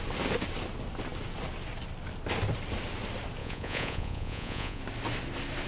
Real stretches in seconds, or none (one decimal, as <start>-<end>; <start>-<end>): 0.0-3.4; 4.8-5.7